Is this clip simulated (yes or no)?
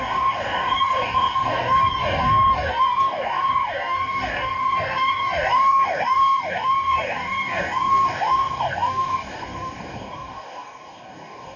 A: yes